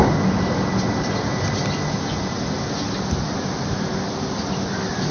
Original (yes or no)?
yes